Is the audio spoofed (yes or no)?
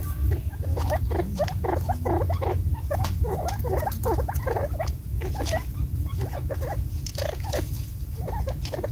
yes